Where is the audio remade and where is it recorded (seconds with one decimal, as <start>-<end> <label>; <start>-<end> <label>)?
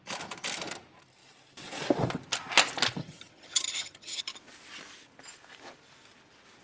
0.0-3.0 recorded; 3.0-4.2 remade; 4.2-6.6 recorded